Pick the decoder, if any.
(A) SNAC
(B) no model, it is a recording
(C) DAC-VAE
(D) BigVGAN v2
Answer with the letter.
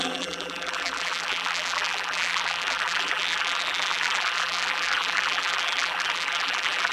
D